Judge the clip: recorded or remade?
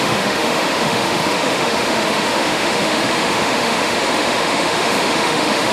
remade